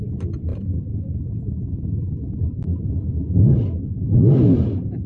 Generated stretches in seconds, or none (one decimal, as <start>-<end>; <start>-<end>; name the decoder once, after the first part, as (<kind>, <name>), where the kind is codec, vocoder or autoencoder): 0.5-1.3 (vocoder, Vocos)